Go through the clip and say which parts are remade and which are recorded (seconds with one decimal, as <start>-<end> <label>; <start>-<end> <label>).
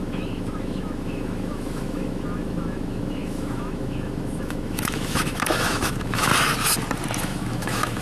0.0-6.3 remade; 6.3-7.2 recorded; 7.2-8.0 remade